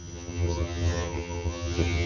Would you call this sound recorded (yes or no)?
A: no